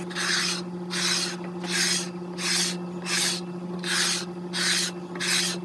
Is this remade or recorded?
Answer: recorded